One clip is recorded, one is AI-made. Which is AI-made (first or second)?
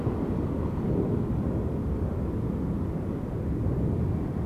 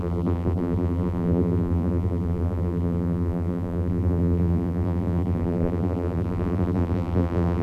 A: second